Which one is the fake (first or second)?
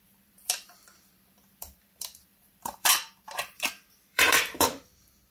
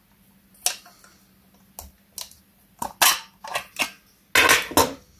first